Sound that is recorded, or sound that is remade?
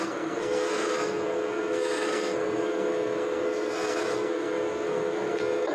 remade